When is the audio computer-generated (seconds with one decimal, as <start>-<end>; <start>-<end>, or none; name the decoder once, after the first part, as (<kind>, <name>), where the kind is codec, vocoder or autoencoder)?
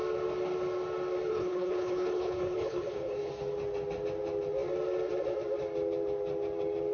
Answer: 1.3-3.3 (codec, HILCodec)